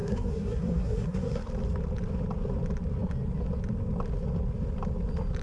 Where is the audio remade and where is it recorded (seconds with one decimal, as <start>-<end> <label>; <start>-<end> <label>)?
0.0-1.5 remade; 1.5-5.4 recorded